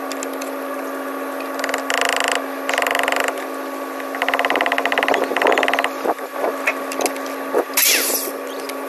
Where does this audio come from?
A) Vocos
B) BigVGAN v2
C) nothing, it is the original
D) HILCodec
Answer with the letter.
C